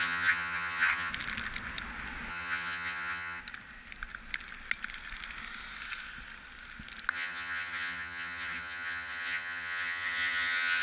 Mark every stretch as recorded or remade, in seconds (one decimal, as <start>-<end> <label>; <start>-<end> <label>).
0.0-1.1 remade; 1.1-2.3 recorded; 2.3-3.4 remade; 3.4-7.1 recorded; 7.1-10.8 remade